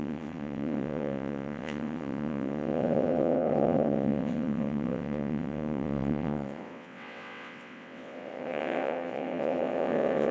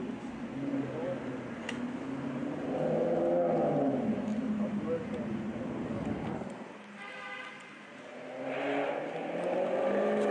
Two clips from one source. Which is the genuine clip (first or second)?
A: second